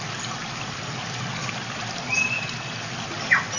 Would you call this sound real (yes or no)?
yes